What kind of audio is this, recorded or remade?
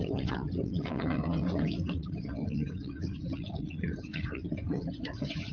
remade